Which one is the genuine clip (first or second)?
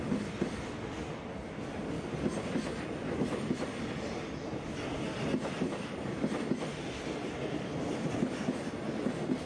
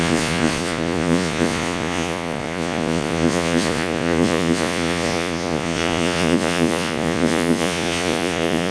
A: first